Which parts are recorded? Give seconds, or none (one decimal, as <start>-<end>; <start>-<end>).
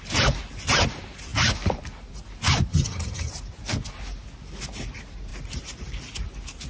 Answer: 0.0-2.7; 3.3-6.7